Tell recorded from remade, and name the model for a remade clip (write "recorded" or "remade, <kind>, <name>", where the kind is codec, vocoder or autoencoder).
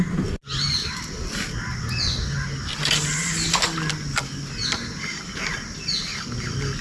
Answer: recorded